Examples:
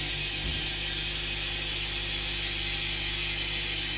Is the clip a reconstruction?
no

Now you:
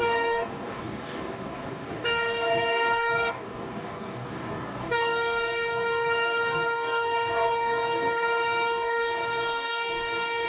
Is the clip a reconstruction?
yes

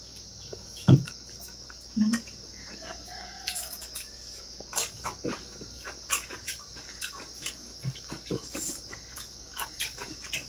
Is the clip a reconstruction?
yes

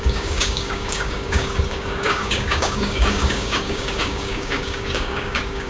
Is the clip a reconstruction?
yes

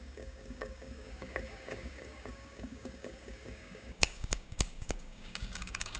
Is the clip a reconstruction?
yes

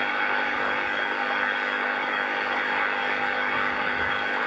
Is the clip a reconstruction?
yes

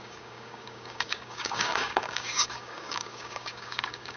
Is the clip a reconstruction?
yes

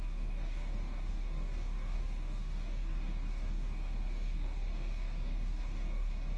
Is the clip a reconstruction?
yes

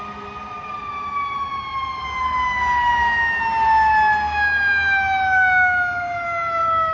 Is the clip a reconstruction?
no